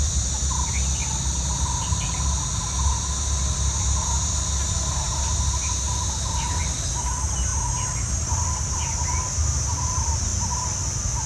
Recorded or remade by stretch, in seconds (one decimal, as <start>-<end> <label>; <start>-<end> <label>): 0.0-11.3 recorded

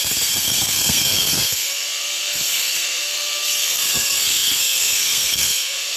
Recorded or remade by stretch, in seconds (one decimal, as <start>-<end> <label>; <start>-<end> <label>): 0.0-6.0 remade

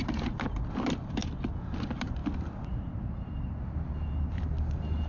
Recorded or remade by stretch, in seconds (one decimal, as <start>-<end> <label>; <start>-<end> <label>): 0.0-1.2 remade; 1.2-1.8 recorded; 1.8-2.2 remade; 2.2-4.3 recorded; 4.3-5.1 remade